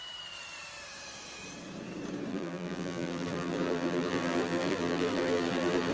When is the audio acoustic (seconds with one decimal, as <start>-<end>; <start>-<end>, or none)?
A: 0.0-2.3